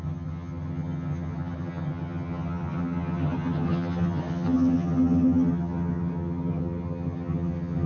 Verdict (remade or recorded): remade